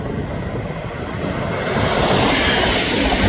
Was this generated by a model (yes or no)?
no